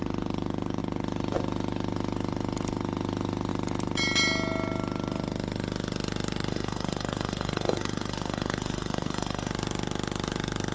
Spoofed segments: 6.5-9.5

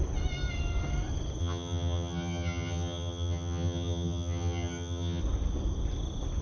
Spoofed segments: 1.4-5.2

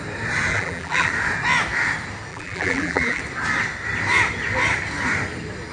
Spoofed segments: 0.5-1.1; 2.3-3.2

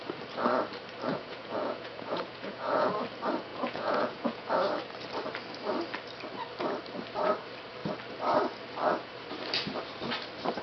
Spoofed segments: 1.1-2.9; 3.5-4.5

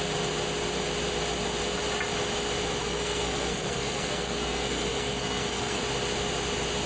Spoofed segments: 2.8-5.8

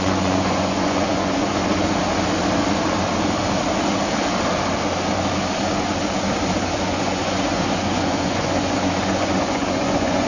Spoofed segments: 0.0-1.6; 6.7-10.3

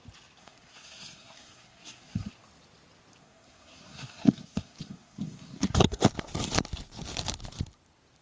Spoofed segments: 0.4-2.3; 3.2-6.0